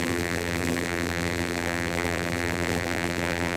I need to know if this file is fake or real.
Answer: fake